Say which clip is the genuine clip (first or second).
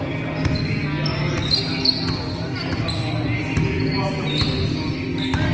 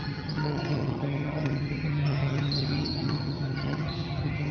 first